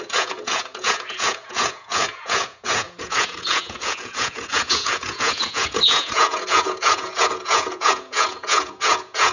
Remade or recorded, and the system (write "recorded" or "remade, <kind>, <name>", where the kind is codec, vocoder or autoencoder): remade, vocoder, Vocos